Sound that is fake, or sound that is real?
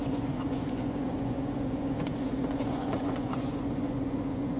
fake